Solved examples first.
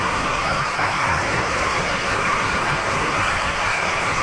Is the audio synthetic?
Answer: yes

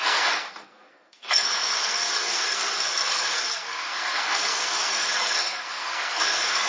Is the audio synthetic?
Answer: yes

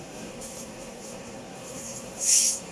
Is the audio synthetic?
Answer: yes